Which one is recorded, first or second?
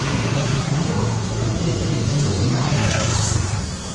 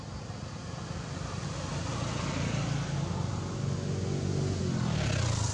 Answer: second